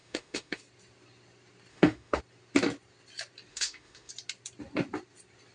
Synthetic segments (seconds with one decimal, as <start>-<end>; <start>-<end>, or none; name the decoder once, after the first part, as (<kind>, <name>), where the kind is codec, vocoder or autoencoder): 0.0-0.6 (autoencoder, DAC-VAE); 1.7-2.2; 3.5-4.1